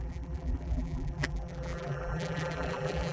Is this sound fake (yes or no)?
yes